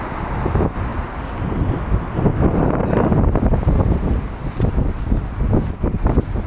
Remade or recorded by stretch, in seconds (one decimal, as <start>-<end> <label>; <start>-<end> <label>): 0.0-6.5 recorded